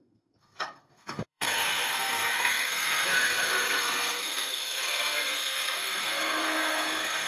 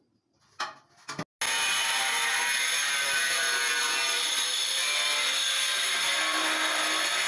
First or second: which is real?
second